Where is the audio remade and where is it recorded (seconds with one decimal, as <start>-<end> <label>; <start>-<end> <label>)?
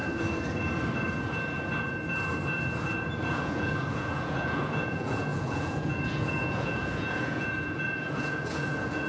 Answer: 0.0-3.3 recorded; 3.3-9.1 remade